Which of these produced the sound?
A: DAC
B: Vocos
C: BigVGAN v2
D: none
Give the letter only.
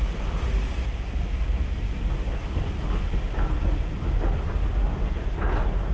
D